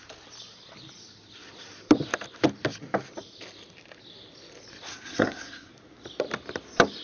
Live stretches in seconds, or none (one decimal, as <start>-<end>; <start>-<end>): 0.0-4.9; 5.7-7.0